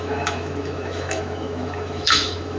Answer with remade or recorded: remade